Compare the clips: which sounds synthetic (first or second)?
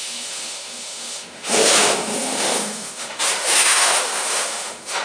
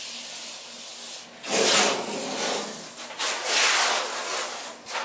first